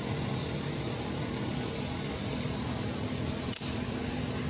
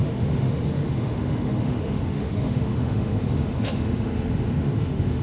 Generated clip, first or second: second